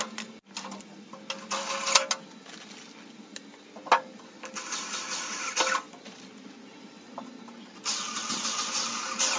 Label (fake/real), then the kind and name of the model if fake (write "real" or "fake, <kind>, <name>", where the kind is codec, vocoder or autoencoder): real